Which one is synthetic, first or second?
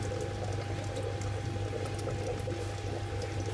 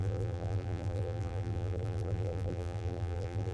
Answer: second